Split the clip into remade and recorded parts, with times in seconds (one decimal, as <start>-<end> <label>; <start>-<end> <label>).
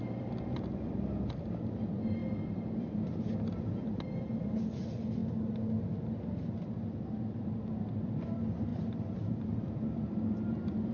0.0-2.2 remade; 2.2-2.8 recorded; 2.8-5.2 remade; 5.2-8.2 recorded; 8.2-10.9 remade